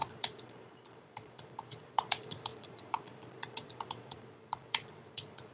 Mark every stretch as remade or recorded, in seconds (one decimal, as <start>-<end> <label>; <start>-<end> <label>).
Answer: 0.0-5.5 remade